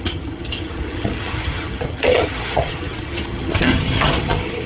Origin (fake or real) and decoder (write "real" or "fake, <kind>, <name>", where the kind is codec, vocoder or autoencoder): fake, vocoder, HiFi-GAN